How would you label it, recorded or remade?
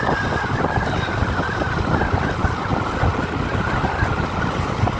recorded